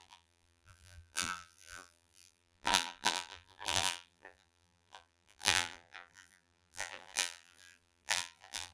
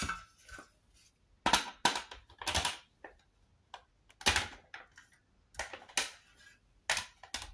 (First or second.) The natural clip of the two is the second